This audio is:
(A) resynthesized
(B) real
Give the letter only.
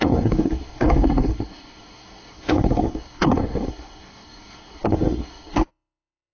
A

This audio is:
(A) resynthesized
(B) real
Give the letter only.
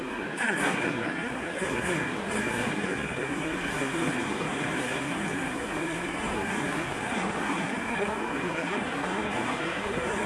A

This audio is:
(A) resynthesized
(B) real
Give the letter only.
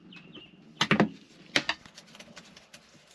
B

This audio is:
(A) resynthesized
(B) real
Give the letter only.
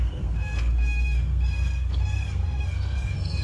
A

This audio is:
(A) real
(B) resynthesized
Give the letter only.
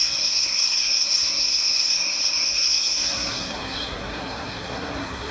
B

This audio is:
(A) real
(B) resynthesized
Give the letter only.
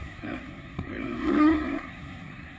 B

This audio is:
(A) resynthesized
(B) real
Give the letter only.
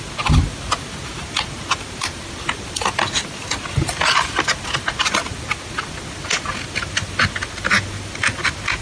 B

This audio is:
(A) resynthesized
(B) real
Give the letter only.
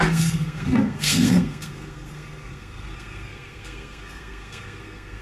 A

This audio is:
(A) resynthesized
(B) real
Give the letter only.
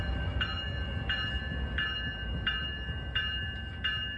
B